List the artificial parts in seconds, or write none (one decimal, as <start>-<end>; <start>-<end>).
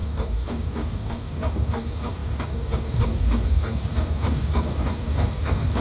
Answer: 0.0-5.8